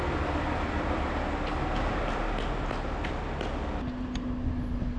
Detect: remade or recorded recorded